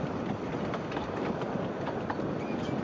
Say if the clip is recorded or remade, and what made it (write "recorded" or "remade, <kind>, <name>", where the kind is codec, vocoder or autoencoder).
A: recorded